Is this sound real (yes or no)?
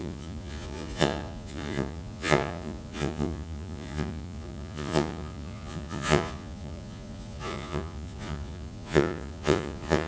no